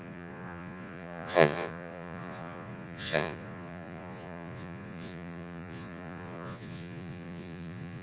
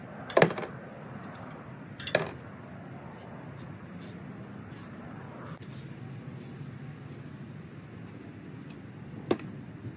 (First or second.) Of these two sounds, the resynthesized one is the first